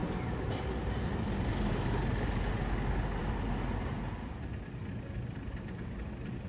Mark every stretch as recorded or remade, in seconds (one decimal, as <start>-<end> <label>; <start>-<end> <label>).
0.0-6.5 recorded